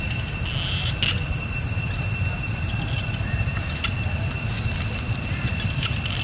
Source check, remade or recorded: recorded